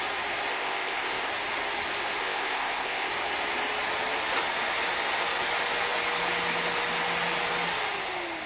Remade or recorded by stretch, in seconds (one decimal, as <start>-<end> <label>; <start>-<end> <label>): 0.0-0.5 recorded; 0.5-1.3 remade; 1.3-2.2 recorded; 2.2-3.1 remade; 3.1-8.5 recorded